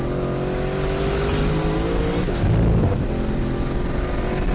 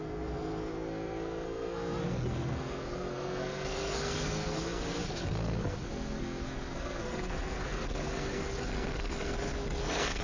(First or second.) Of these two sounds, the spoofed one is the second